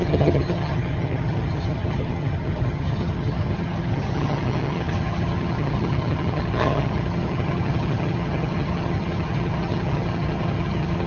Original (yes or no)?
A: no